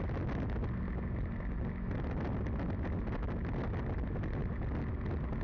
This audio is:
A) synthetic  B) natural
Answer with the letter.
B